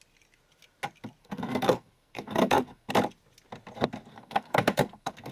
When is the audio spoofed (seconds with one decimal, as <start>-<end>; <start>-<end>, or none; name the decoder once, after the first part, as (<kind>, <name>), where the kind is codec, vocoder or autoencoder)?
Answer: 1.2-2.9 (codec, SNAC); 4.1-5.3